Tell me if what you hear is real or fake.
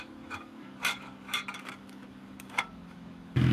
fake